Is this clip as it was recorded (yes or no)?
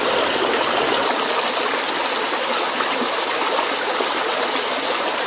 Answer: yes